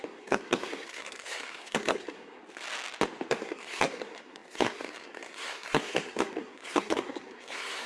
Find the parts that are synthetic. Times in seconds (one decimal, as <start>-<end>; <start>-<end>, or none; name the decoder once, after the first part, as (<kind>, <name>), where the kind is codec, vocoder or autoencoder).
0.0-2.4 (codec, SNAC); 3.3-7.9